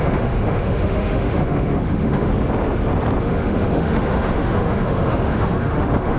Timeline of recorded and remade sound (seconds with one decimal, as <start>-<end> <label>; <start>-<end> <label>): 0.0-2.3 remade; 2.3-3.2 recorded; 3.2-6.2 remade